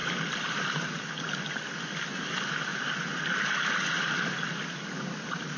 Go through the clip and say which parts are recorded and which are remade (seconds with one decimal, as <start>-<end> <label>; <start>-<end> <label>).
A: 0.0-5.6 recorded